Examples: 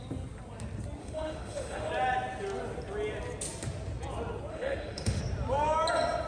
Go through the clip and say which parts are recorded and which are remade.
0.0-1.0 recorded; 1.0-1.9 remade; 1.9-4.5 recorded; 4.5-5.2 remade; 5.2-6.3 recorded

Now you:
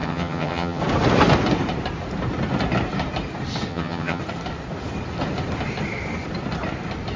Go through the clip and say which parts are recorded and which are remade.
0.0-0.8 remade; 0.8-3.7 recorded; 3.7-4.2 remade; 4.2-7.2 recorded

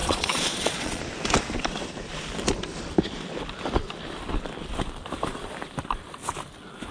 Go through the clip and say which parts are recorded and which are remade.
0.0-1.0 remade; 1.0-6.9 recorded

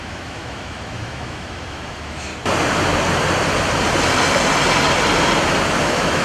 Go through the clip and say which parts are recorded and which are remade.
0.0-2.3 remade; 2.3-5.8 recorded; 5.8-6.2 remade

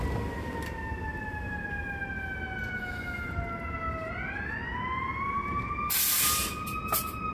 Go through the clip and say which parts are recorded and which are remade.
0.0-7.3 recorded

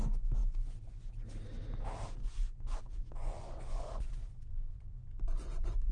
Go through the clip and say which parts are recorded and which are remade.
0.0-2.2 recorded; 2.2-5.9 remade

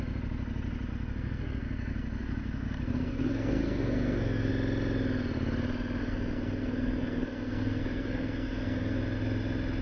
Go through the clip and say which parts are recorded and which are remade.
0.0-0.9 recorded; 0.9-4.5 remade; 4.5-6.0 recorded; 6.0-9.0 remade; 9.0-9.8 recorded